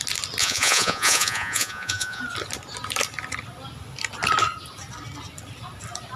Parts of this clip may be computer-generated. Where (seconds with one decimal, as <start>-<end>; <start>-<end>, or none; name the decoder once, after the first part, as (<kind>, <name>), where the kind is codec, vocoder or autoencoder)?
0.4-2.2 (vocoder, Vocos)